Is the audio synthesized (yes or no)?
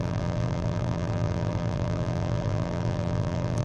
yes